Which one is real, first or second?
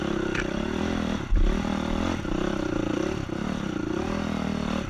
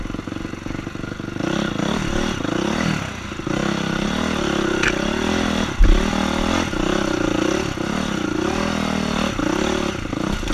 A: second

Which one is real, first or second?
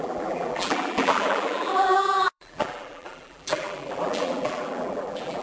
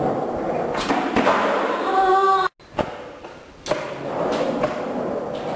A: second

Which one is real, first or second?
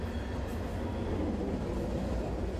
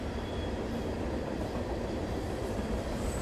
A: first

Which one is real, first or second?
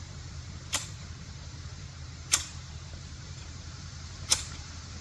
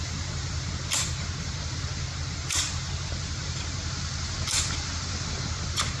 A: second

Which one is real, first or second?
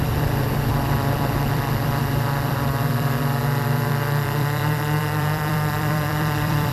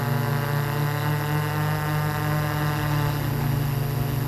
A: second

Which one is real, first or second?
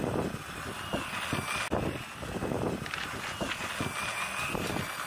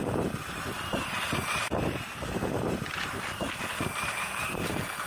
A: first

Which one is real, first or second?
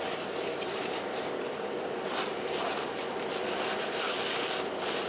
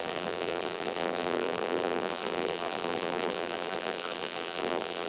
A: first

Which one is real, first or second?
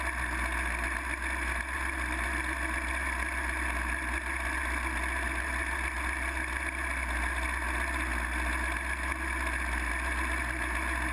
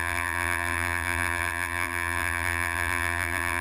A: first